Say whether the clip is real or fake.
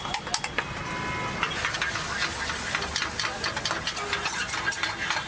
real